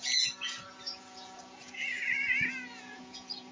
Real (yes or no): no